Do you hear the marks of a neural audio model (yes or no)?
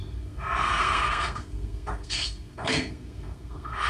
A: yes